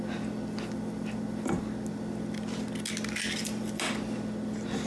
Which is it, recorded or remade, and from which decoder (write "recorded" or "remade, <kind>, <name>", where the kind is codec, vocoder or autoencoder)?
recorded